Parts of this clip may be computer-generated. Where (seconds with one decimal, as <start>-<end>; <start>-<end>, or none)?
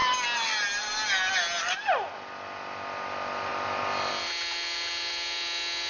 none